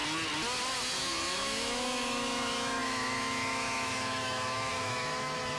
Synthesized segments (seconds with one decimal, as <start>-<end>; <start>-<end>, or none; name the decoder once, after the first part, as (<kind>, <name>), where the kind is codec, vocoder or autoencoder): 1.0-5.6 (autoencoder, DAC-VAE)